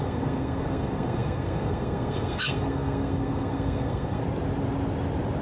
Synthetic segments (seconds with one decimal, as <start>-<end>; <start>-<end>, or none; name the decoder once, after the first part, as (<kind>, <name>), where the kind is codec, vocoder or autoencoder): 0.0-4.2 (codec, SNAC)